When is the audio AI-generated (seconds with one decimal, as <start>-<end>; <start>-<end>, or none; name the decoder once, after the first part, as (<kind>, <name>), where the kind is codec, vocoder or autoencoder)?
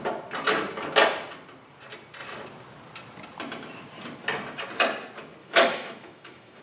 5.4-6.6 (autoencoder, DAC-VAE)